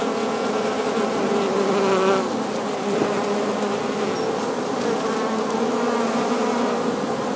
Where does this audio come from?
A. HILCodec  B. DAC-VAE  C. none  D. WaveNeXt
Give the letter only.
C